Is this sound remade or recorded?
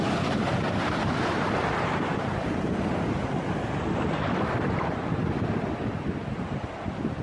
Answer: recorded